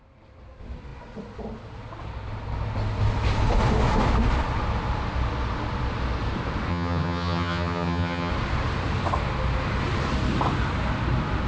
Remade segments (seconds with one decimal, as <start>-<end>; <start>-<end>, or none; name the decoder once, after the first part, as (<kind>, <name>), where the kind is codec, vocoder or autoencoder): 6.7-8.3 (vocoder, HiFi-GAN)